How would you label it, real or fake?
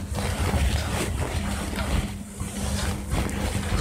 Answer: real